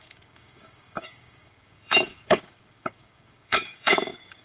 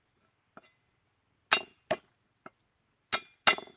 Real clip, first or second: second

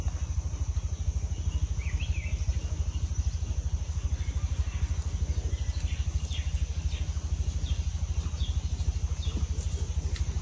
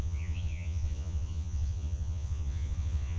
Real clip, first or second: first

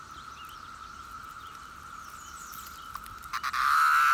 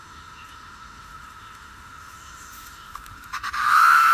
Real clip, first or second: first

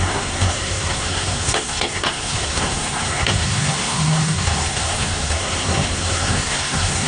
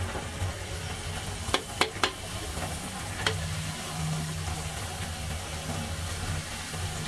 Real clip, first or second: second